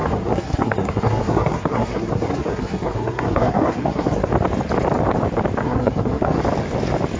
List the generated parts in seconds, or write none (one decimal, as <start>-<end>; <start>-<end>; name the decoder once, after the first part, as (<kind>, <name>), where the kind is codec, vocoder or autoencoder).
0.0-4.3 (codec, SNAC); 5.6-6.4